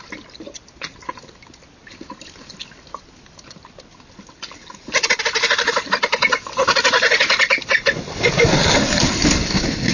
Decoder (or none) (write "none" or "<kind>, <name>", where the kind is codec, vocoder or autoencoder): none